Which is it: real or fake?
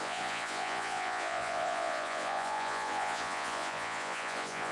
fake